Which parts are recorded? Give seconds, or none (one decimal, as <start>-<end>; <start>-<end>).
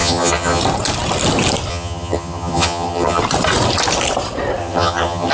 0.6-1.7; 3.2-4.6